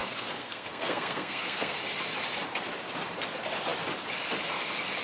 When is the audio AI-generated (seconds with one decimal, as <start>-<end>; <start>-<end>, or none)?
0.0-1.8